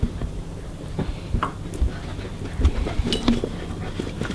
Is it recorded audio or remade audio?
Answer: recorded